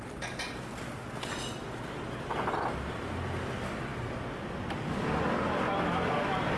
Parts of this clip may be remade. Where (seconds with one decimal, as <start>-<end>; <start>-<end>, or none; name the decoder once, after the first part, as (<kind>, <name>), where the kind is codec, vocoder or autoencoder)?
none